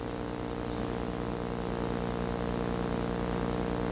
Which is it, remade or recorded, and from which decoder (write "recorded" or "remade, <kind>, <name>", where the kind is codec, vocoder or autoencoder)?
recorded